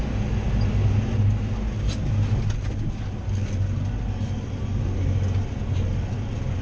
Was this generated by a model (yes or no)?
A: no